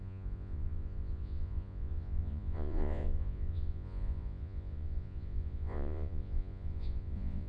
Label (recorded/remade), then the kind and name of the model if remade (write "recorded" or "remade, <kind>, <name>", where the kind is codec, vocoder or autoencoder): remade, vocoder, Vocos